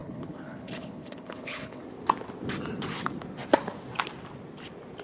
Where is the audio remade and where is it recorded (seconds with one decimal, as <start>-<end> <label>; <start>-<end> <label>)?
0.0-1.8 remade; 1.8-5.0 recorded

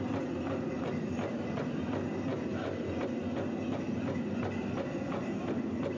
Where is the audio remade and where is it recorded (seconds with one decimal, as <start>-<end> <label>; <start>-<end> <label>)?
0.0-6.0 recorded

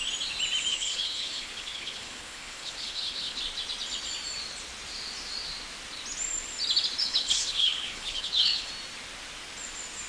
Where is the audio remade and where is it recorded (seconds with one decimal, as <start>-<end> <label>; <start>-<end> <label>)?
0.0-0.7 recorded; 0.7-3.4 remade; 3.4-7.0 recorded; 7.0-8.7 remade; 8.7-10.1 recorded

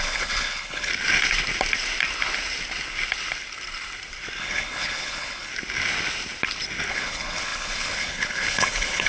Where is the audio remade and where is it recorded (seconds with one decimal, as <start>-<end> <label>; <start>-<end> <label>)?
0.0-0.9 remade; 0.9-4.4 recorded; 4.4-5.5 remade; 5.5-6.9 recorded; 6.9-9.1 remade

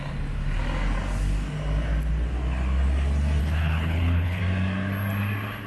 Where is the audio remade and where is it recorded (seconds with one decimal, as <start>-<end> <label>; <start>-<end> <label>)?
0.0-3.4 recorded; 3.4-4.4 remade; 4.4-5.7 recorded

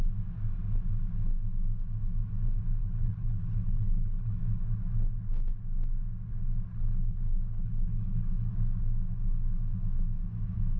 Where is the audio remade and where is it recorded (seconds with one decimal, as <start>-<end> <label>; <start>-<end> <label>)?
0.0-2.8 recorded; 2.8-4.4 remade; 4.4-6.7 recorded; 6.7-8.5 remade; 8.5-10.8 recorded

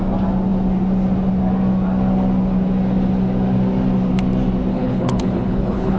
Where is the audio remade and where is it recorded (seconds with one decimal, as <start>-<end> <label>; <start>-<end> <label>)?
0.0-4.7 recorded; 4.7-6.0 remade